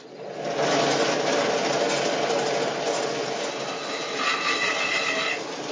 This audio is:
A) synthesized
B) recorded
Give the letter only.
B